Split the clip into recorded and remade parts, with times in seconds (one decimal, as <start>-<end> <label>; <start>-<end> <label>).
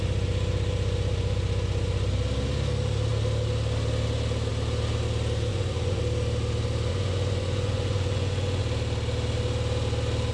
0.0-5.5 recorded; 5.5-6.0 remade; 6.0-6.9 recorded; 6.9-8.6 remade; 8.6-10.3 recorded